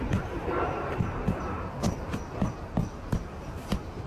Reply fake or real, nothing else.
fake